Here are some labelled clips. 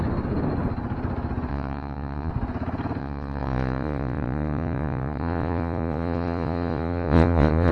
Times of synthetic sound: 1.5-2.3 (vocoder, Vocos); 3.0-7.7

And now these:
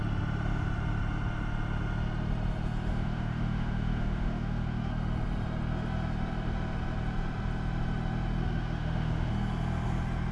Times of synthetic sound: 2.9-4.9 (autoencoder, DAC-VAE); 8.4-9.3

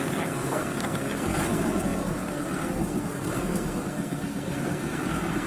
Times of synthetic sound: 0.0-5.5 (codec, SNAC)

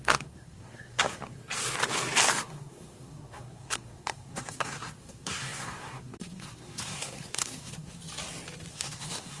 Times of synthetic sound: 0.0-1.4 (codec, SNAC); 2.4-8.0; 8.7-9.4

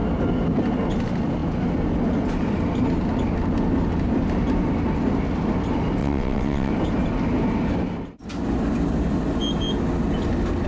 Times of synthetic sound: 6.0-6.7 (vocoder, WaveNeXt)

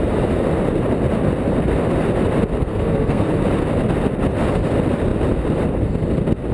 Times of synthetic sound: 2.6-3.3 (codec, SNAC)

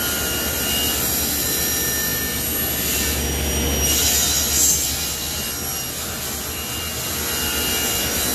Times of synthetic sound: none